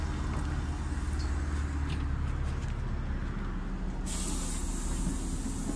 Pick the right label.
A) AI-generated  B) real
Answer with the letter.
B